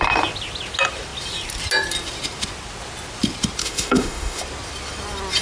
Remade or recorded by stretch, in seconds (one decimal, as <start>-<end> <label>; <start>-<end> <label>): 0.0-3.6 recorded; 3.6-4.4 remade; 4.4-5.4 recorded